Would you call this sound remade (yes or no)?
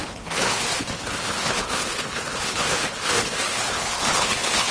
yes